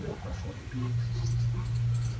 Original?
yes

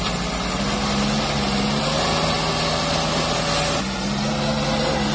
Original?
yes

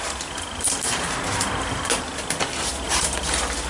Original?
yes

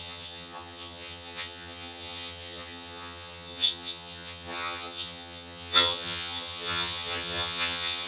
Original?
no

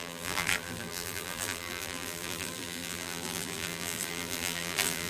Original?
no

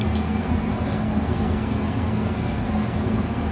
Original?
no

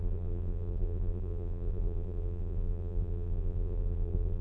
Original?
no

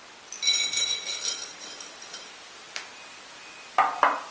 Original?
yes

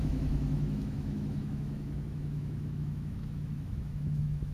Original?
no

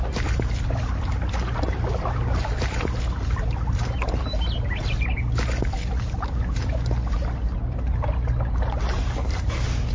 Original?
yes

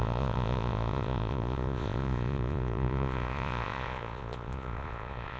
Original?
no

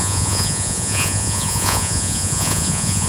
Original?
no